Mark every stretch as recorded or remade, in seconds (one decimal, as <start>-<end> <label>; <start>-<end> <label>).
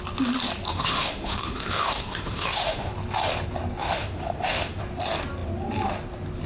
0.0-0.7 recorded; 0.7-2.9 remade; 2.9-3.8 recorded; 3.8-4.8 remade; 4.8-6.5 recorded